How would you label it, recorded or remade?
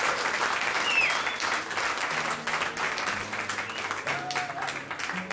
recorded